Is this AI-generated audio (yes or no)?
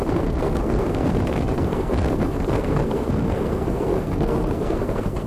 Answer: yes